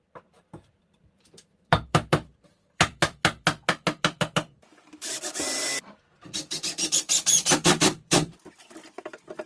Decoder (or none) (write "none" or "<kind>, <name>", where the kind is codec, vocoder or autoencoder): vocoder, BigVGAN v2